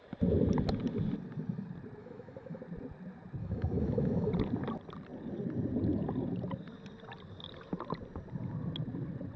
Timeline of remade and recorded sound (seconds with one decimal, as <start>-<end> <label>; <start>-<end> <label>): 0.0-2.0 recorded; 2.0-2.6 remade; 2.6-3.4 recorded; 3.4-4.3 remade; 4.3-9.4 recorded